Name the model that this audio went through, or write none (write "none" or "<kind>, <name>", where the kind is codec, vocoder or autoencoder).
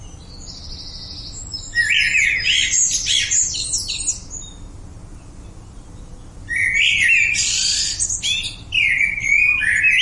none